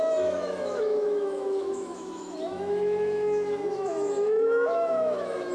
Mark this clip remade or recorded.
remade